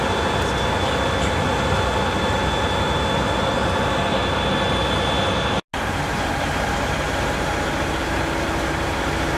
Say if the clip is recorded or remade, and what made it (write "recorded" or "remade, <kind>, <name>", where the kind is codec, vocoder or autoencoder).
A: recorded